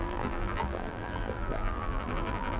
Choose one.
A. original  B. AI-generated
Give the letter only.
B